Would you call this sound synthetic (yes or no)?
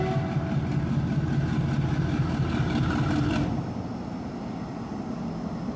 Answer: no